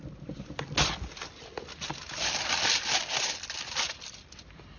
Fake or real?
real